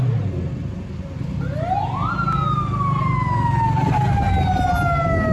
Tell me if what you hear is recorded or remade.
recorded